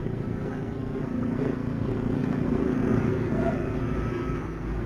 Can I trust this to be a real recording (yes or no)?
no